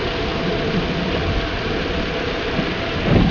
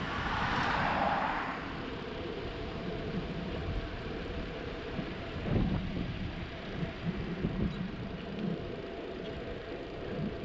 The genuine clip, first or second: first